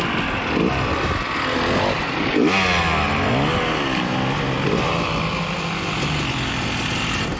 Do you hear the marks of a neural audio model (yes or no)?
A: no